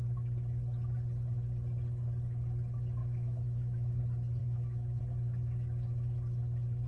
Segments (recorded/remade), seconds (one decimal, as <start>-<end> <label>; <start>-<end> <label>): 0.0-3.0 recorded; 3.0-4.0 remade; 4.0-4.4 recorded; 4.4-5.0 remade; 5.0-6.9 recorded